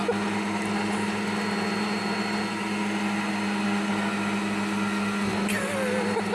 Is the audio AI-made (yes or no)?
no